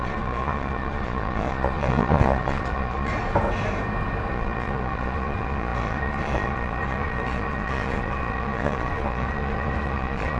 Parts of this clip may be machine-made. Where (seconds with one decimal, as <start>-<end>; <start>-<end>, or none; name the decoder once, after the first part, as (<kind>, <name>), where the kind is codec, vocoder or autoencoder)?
0.0-3.1 (vocoder, Vocos); 4.3-10.4